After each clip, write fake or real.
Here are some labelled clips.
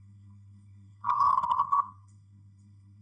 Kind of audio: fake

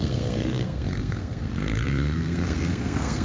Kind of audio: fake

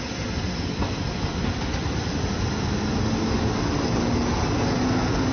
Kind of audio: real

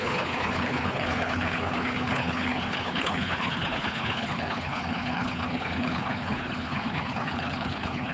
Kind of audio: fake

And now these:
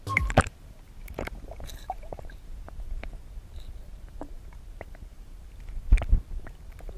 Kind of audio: fake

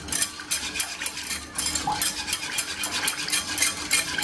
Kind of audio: real